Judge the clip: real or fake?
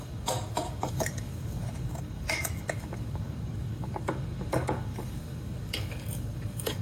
fake